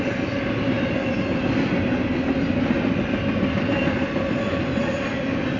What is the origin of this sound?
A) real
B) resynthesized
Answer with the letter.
A